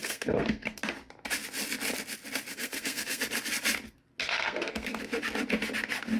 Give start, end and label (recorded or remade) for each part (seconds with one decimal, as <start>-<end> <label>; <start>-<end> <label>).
0.0-0.8 remade; 0.8-2.5 recorded; 2.5-3.2 remade; 3.2-4.2 recorded; 4.2-5.0 remade; 5.0-6.2 recorded